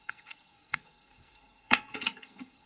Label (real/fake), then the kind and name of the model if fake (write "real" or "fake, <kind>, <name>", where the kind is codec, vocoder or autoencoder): fake, codec, SNAC